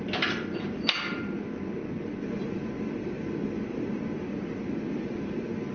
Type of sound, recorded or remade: recorded